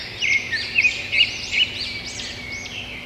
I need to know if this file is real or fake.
real